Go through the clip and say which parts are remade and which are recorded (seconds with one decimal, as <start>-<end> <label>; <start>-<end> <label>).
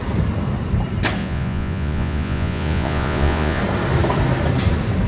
0.0-1.2 recorded; 1.2-3.6 remade; 3.6-5.1 recorded